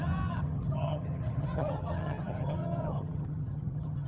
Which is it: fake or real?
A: fake